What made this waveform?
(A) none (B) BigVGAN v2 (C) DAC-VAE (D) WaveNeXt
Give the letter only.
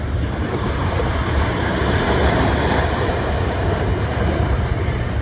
B